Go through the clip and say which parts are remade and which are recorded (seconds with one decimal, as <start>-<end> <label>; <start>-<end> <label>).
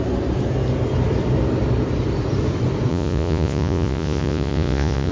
0.0-2.9 recorded; 2.9-5.1 remade